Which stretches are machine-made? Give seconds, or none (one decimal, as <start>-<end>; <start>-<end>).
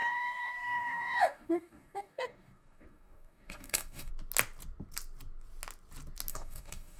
0.0-4.1; 6.3-7.0